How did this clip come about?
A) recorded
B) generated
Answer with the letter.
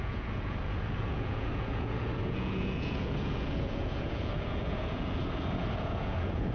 B